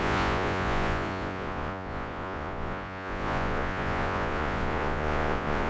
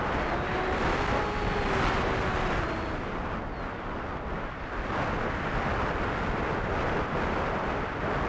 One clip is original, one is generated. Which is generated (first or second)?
first